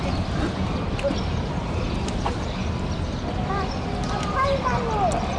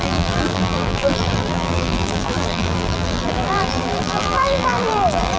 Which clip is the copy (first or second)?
second